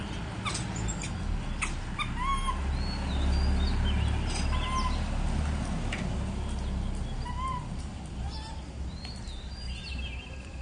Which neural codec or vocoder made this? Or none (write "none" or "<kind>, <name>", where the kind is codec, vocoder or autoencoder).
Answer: none